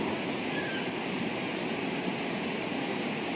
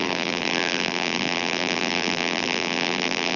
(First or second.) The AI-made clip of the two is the second